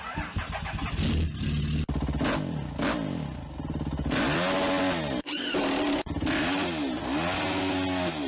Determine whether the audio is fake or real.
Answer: real